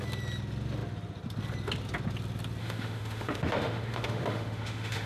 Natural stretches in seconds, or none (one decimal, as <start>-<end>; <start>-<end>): 0.0-2.6